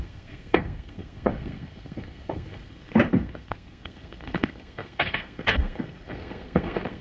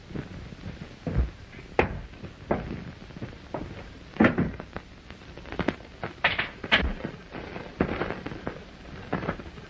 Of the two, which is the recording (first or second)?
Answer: second